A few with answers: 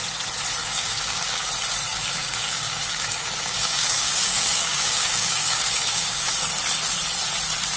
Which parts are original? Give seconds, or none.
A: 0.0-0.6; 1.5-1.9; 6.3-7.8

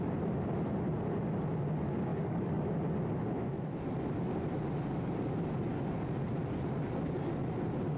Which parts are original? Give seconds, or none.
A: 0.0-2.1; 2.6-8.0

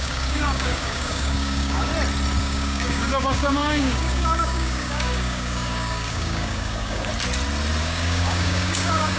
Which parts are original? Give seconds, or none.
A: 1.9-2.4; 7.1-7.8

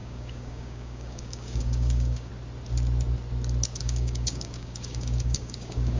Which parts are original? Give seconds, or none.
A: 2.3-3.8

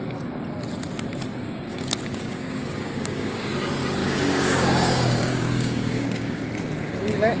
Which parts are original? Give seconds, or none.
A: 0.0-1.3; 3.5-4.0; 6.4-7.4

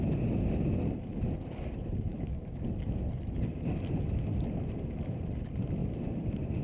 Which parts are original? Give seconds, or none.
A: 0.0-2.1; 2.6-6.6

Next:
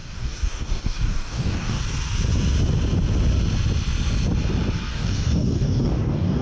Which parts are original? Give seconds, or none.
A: 1.8-4.9